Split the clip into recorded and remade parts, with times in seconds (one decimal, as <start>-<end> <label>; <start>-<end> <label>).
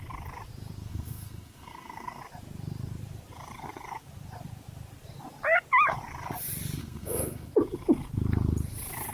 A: 0.0-0.9 recorded; 0.9-2.2 remade; 2.2-6.8 recorded; 6.8-7.5 remade; 7.5-9.1 recorded